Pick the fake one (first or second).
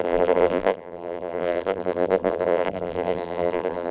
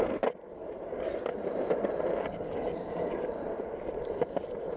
first